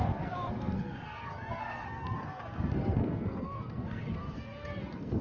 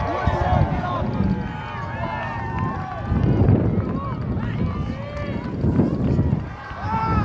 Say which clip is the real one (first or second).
second